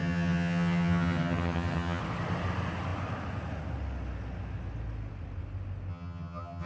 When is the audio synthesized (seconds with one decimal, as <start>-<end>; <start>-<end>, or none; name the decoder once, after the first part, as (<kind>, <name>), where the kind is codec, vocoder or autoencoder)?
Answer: 0.0-2.0 (vocoder, HiFi-GAN); 5.9-6.7